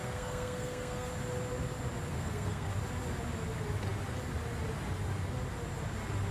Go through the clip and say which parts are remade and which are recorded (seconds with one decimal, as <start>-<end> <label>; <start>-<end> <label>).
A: 0.0-1.1 remade; 1.1-2.1 recorded; 2.1-2.7 remade; 2.7-6.3 recorded